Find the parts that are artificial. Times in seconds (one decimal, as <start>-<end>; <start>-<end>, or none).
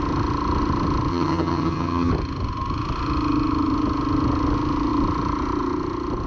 1.1-2.1